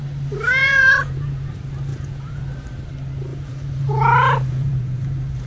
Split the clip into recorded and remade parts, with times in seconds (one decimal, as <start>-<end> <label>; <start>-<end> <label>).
0.0-0.6 recorded; 0.6-1.5 remade; 1.5-1.9 recorded; 1.9-2.4 remade; 2.4-3.3 recorded; 3.3-5.5 remade